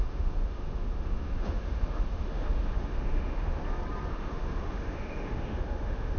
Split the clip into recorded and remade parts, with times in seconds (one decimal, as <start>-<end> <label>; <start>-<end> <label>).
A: 0.0-3.6 remade; 3.6-4.1 recorded; 4.1-6.2 remade